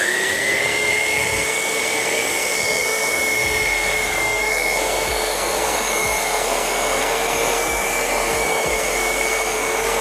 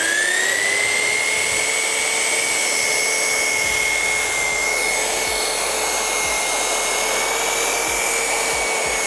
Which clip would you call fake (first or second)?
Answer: first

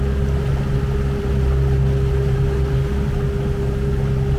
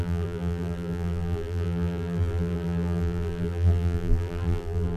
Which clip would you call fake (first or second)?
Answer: second